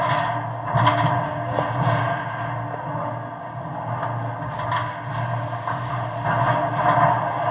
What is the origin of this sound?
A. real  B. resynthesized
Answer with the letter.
A